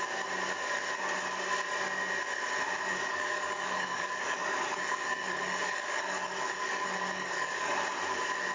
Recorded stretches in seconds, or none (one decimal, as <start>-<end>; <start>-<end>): 0.0-2.9; 7.7-8.5